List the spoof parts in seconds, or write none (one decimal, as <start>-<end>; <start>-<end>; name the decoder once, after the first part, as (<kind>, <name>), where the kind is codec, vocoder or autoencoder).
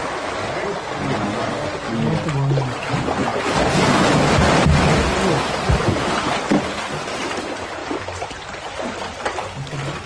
none